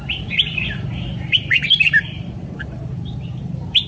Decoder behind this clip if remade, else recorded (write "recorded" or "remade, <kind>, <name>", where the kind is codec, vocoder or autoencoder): remade, vocoder, BigVGAN v2